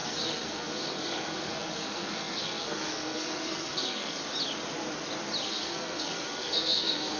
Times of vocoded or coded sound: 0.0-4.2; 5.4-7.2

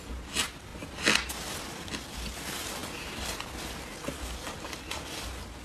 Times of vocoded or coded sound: 0.0-0.7; 1.3-5.6

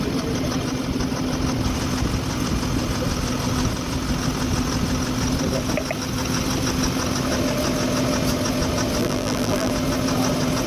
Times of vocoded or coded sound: 9.0-9.7

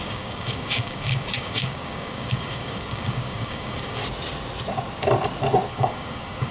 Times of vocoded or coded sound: 0.0-4.0; 5.7-6.5